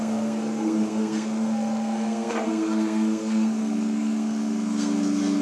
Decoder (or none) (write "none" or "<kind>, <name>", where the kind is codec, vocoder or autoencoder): codec, SNAC